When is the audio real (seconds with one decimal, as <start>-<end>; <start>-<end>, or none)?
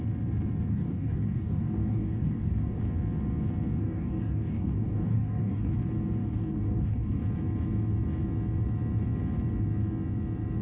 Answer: 0.0-0.7; 2.8-3.8; 5.8-6.2; 7.2-10.6